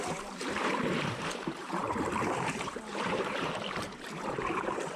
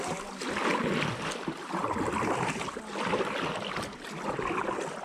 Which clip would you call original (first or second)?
second